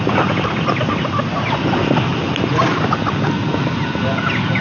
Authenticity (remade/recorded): recorded